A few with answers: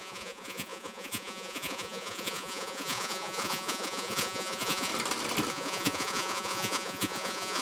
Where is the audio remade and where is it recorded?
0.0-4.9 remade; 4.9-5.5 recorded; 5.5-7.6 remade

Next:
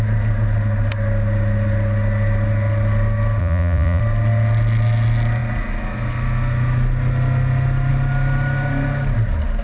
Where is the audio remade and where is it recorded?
0.0-3.4 recorded; 3.4-4.0 remade; 4.0-9.6 recorded

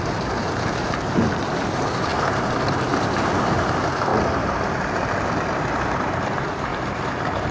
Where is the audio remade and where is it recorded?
0.0-7.5 remade

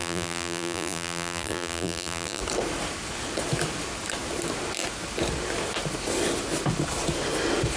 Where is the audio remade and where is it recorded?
0.0-2.4 remade; 2.4-7.8 recorded

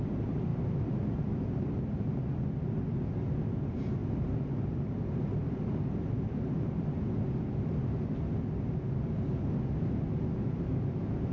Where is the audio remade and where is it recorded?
0.0-11.3 recorded